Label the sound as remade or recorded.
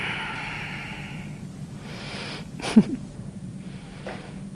remade